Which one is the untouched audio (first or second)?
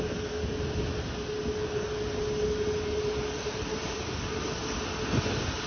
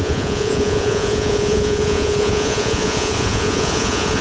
first